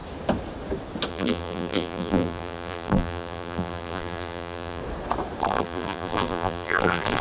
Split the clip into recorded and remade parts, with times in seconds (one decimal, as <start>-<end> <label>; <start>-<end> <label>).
0.0-1.1 recorded; 1.1-4.8 remade; 4.8-5.4 recorded; 5.4-7.2 remade

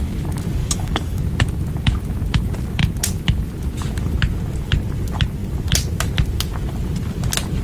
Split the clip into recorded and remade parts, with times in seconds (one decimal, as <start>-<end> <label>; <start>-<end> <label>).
0.0-0.6 recorded; 0.6-1.2 remade; 1.2-7.6 recorded

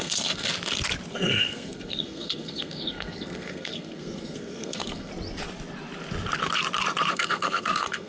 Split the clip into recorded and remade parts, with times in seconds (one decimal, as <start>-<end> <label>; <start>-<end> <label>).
0.0-0.5 remade; 0.5-1.1 recorded; 1.1-5.1 remade; 5.1-7.1 recorded; 7.1-8.1 remade

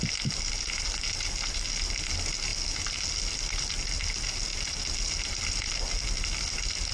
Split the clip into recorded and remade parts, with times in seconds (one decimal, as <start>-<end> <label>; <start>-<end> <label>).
0.0-6.9 recorded